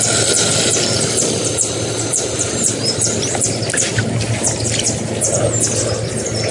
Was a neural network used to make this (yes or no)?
no